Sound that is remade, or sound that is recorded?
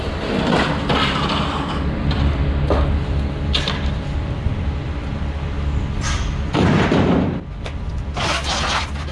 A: remade